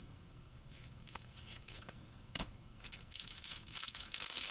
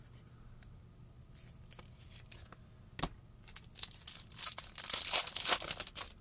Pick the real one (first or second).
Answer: second